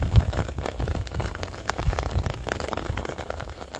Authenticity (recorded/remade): remade